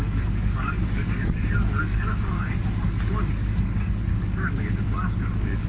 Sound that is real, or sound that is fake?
fake